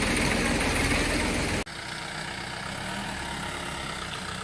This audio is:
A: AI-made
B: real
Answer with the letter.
B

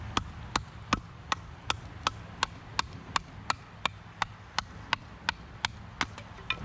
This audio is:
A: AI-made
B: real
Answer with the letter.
B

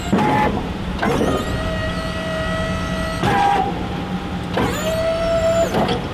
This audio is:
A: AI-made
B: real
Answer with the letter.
B